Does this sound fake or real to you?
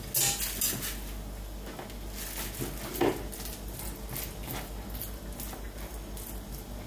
real